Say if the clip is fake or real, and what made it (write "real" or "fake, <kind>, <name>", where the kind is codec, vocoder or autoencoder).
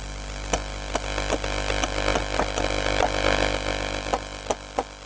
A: real